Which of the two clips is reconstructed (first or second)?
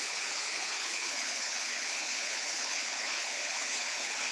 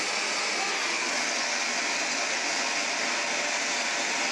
first